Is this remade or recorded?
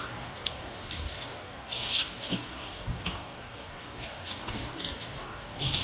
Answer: remade